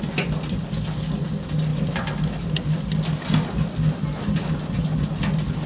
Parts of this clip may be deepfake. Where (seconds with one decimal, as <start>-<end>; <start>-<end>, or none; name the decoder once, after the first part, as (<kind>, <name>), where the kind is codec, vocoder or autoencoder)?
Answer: none